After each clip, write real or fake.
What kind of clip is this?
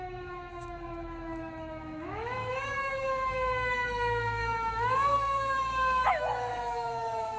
fake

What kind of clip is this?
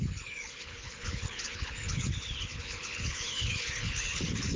fake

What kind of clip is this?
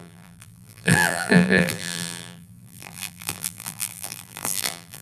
fake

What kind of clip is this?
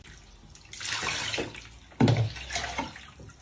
real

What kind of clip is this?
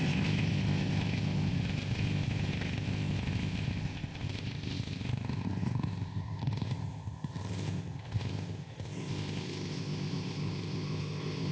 fake